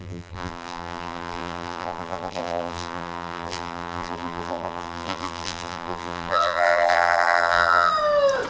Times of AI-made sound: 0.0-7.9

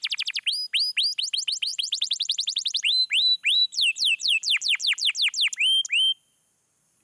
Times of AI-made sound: 1.7-5.1

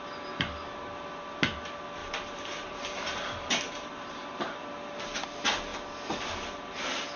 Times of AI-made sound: 2.0-4.6

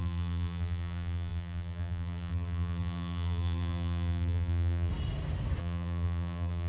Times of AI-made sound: 0.0-4.9; 5.6-6.7

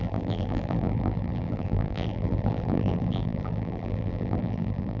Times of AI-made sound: 0.0-5.0

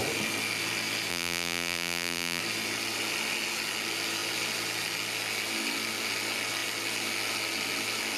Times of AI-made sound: 1.1-2.4